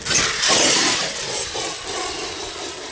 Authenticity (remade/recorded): recorded